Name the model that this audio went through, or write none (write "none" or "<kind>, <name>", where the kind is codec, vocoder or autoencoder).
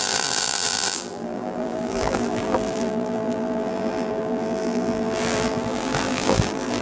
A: vocoder, BigVGAN v2